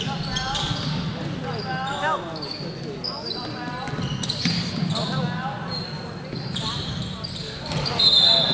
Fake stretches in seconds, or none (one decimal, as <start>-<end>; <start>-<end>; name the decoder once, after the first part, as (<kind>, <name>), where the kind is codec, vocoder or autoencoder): none